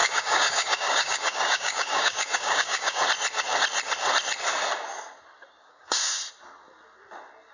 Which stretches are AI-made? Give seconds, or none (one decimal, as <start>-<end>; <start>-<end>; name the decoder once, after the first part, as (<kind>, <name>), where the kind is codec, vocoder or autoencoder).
0.0-3.0 (codec, DAC); 5.6-6.2